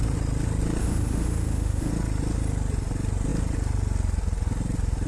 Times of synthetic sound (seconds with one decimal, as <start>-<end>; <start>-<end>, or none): 0.8-1.9